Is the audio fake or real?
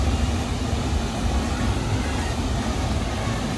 real